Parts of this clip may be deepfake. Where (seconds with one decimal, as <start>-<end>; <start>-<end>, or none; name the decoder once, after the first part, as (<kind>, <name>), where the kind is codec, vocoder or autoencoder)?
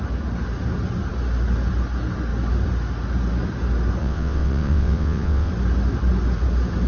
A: 4.0-5.5 (vocoder, WaveNeXt)